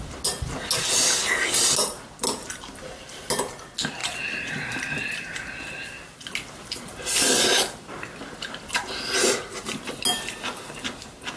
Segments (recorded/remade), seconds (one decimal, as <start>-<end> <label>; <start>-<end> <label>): 0.0-11.4 recorded